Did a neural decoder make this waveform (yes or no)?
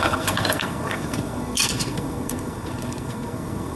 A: yes